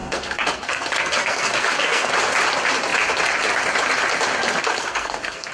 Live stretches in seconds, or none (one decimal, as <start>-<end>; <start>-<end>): 2.1-4.6